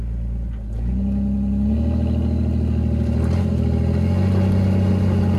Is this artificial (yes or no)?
no